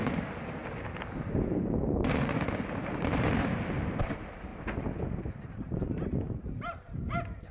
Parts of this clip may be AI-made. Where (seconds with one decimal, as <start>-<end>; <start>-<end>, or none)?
0.0-0.6; 1.5-4.5; 5.1-7.5